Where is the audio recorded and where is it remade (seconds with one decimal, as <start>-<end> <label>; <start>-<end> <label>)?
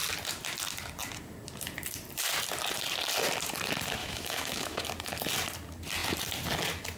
0.0-4.0 recorded; 4.0-4.8 remade; 4.8-7.0 recorded